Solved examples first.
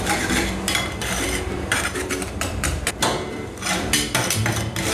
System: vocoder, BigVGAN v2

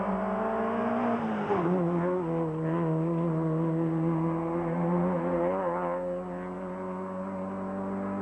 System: none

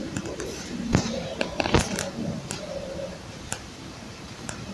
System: vocoder, BigVGAN v2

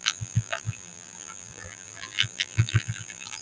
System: vocoder, BigVGAN v2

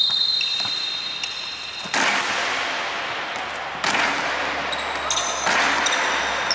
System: none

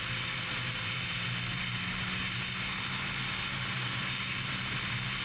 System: none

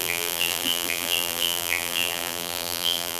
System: vocoder, BigVGAN v2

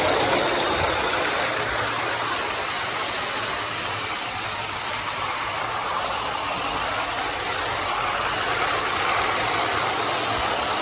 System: none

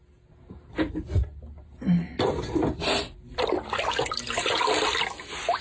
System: none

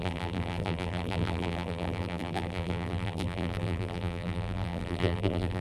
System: vocoder, BigVGAN v2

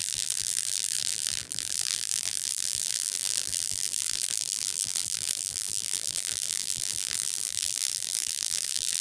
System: vocoder, BigVGAN v2